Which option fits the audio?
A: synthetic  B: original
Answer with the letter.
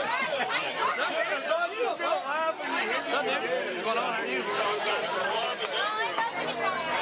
B